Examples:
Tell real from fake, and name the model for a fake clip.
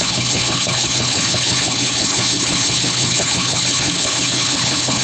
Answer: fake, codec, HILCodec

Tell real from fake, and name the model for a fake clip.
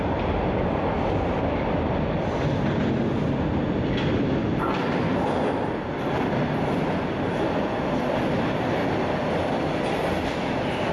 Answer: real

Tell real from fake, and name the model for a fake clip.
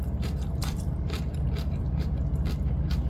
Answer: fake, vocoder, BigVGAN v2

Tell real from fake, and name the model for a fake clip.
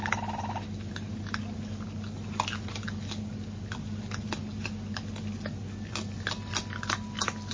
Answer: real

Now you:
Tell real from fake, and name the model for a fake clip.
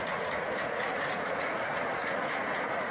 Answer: fake, vocoder, Vocos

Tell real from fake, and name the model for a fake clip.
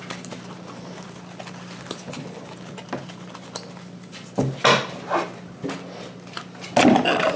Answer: real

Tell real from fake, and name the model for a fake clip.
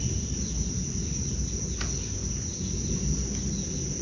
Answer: real